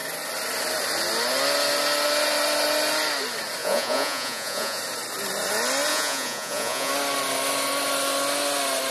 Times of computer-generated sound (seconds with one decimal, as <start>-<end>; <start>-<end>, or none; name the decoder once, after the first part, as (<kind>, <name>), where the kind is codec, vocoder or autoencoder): 3.6-4.8 (vocoder, Vocos); 5.9-6.9